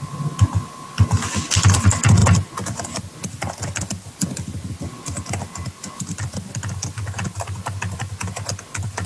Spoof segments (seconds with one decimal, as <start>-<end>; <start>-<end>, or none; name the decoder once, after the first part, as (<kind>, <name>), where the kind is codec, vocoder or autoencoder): none